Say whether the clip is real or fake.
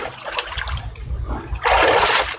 real